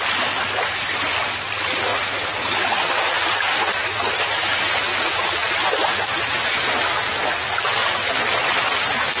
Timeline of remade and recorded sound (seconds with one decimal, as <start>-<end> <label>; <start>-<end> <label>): 0.0-9.2 recorded